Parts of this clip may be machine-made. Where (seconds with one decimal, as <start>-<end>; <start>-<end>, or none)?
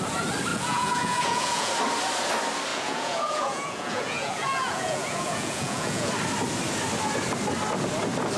0.5-1.7; 2.7-6.1